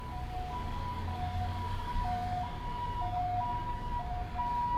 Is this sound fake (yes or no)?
yes